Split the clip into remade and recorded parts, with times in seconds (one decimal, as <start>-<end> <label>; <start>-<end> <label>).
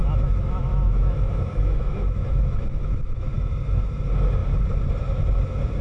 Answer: 0.0-3.5 remade; 3.5-5.8 recorded